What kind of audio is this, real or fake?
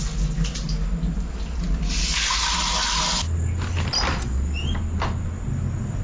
real